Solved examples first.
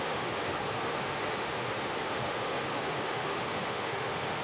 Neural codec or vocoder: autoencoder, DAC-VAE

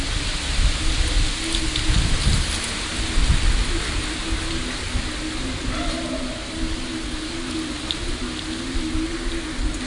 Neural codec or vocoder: none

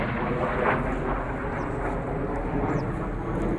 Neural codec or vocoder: none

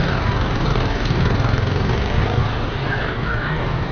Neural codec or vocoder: codec, DAC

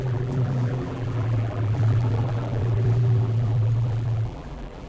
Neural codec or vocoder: vocoder, BigVGAN v2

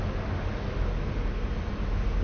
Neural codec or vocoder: none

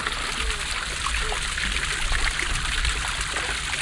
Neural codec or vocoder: none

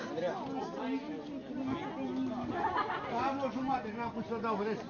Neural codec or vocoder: none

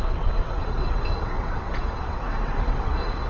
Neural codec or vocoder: vocoder, WaveNeXt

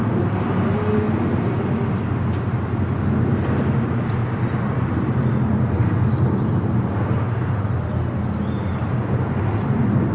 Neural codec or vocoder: none